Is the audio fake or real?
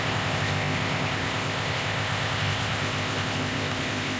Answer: fake